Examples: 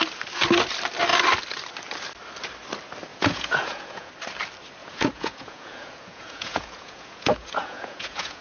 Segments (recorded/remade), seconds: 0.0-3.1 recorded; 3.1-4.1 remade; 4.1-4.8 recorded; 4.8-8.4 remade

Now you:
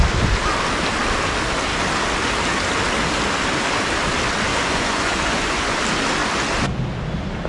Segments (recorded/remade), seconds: 0.0-4.5 recorded; 4.5-5.8 remade; 5.8-7.5 recorded

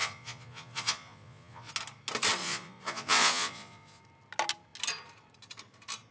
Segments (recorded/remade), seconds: 0.0-1.7 remade; 1.7-2.4 recorded; 2.4-4.0 remade; 4.0-6.1 recorded

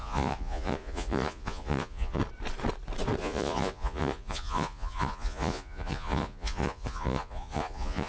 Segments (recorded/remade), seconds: 0.0-2.2 remade; 2.2-3.2 recorded; 3.2-8.1 remade

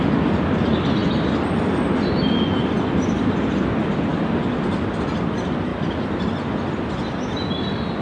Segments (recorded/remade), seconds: 0.0-8.0 recorded